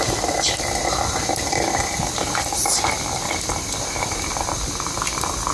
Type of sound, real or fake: real